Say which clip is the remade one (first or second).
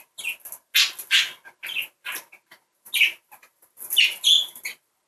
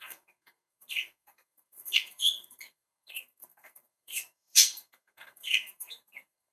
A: second